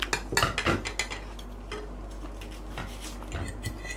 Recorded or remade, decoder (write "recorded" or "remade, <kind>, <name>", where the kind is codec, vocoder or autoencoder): recorded